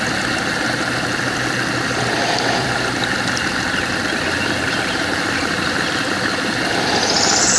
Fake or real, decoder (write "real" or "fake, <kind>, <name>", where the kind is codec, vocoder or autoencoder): real